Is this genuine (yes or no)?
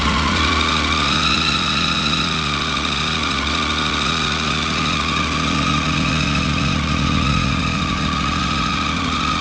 no